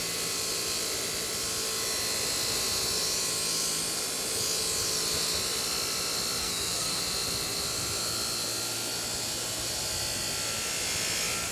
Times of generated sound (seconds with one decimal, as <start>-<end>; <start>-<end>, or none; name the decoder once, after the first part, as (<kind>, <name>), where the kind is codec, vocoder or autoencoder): 6.4-7.0 (codec, SNAC)